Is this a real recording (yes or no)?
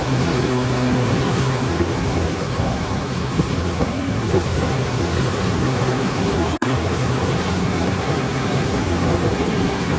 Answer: no